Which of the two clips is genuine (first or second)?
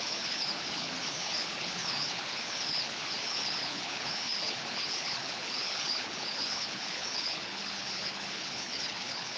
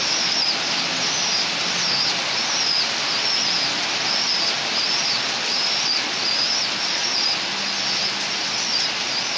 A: second